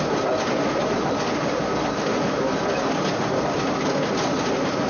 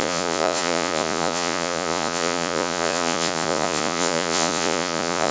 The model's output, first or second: second